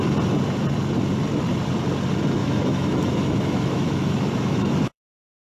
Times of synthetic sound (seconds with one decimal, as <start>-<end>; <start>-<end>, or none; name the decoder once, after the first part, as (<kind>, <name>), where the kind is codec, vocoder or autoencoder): 2.4-5.4 (autoencoder, DAC-VAE)